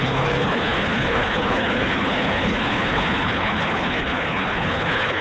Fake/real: fake